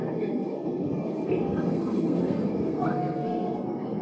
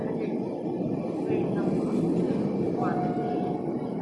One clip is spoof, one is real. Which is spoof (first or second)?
first